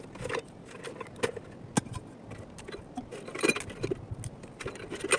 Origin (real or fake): real